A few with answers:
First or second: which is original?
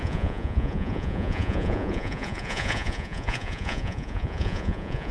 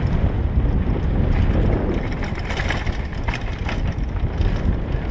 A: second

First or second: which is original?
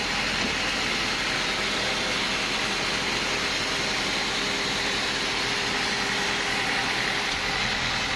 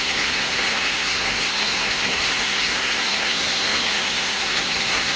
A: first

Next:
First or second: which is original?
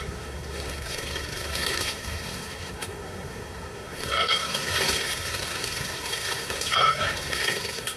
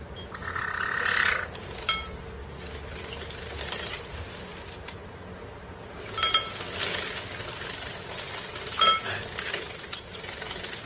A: second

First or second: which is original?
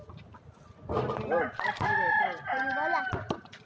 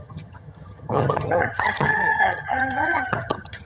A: first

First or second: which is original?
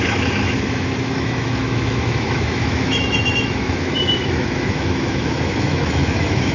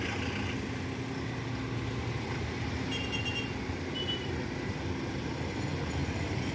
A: second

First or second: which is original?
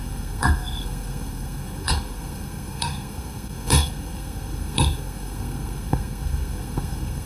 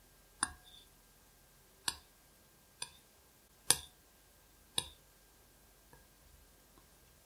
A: second